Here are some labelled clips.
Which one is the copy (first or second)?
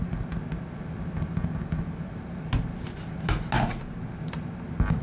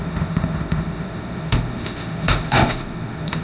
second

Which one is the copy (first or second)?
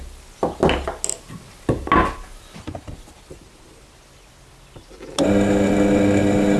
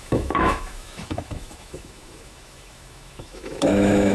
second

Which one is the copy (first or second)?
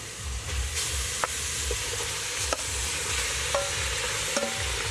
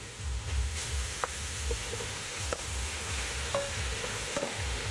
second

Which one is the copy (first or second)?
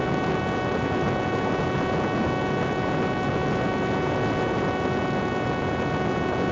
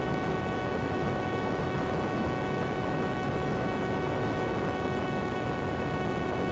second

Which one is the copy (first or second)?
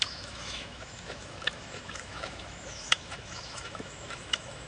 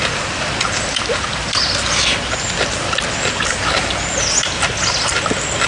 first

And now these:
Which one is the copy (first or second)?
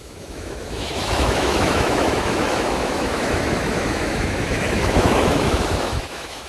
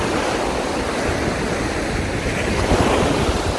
first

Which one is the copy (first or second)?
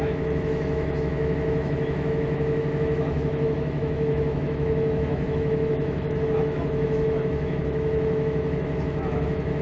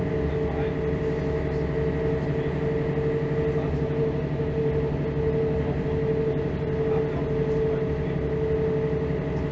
first